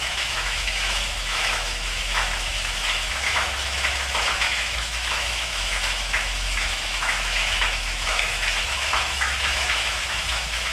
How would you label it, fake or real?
fake